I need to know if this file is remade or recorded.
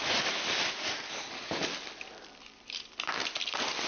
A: recorded